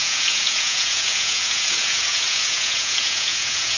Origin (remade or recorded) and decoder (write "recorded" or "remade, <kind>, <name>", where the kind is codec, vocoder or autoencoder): remade, vocoder, Vocos